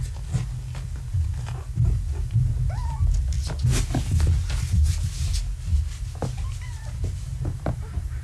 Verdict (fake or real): real